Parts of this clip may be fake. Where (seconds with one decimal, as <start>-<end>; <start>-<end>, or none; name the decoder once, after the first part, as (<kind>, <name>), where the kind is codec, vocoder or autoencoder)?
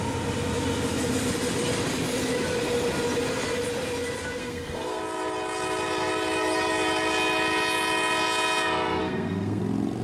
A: 4.4-5.0 (codec, SNAC); 9.0-9.6